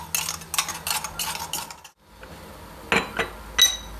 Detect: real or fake real